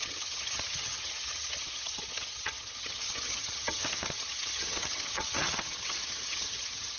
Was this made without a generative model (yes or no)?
no